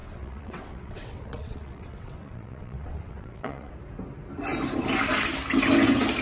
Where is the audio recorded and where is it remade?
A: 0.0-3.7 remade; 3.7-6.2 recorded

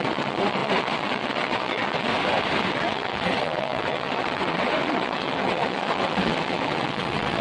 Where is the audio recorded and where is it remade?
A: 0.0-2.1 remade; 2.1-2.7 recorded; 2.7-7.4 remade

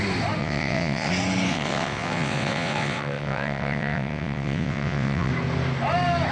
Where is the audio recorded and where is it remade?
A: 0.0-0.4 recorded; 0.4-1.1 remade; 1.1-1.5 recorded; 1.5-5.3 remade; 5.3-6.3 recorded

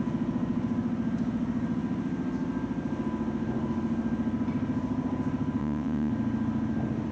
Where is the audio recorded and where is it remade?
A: 0.0-5.6 recorded; 5.6-6.1 remade; 6.1-7.1 recorded